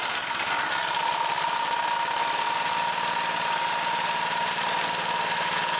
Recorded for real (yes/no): yes